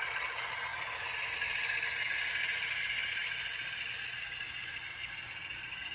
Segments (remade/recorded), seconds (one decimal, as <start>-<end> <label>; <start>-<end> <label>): 0.0-5.9 recorded